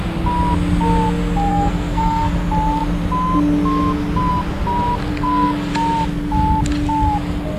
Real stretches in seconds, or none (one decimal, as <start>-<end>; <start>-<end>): 0.0-1.5; 2.3-5.1; 5.7-7.6